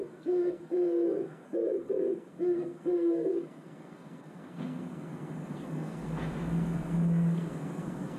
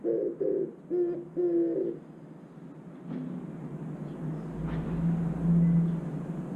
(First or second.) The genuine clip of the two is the second